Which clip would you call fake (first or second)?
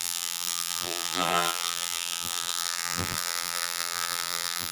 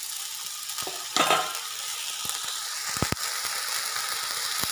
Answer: first